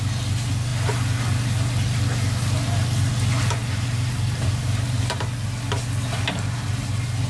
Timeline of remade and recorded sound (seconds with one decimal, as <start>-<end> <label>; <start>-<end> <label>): 0.0-3.6 recorded; 3.6-5.2 remade; 5.2-7.3 recorded